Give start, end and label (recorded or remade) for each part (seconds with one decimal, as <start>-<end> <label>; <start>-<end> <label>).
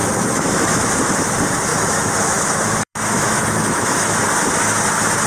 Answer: 0.0-1.0 remade; 1.0-1.7 recorded; 1.7-4.2 remade; 4.2-5.3 recorded